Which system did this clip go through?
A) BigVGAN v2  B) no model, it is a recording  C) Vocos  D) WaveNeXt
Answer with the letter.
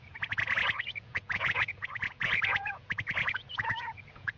C